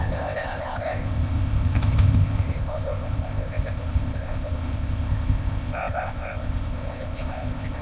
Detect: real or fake fake